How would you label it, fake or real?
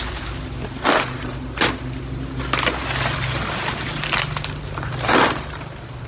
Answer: real